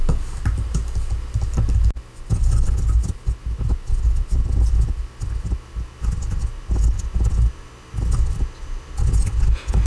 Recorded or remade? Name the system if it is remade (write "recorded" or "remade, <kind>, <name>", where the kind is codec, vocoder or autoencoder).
recorded